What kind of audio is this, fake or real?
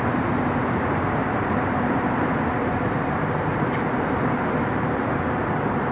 fake